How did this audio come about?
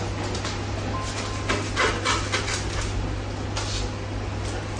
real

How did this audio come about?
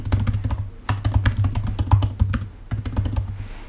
real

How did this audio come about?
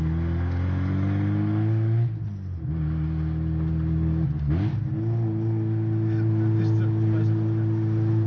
real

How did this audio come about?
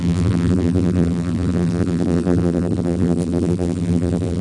fake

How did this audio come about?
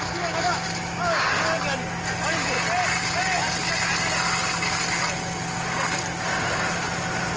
real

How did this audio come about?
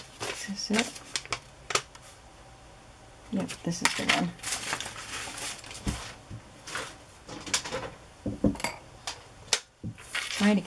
real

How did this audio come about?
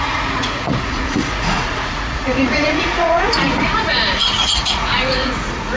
fake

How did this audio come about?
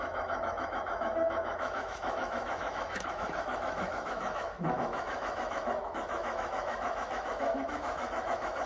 fake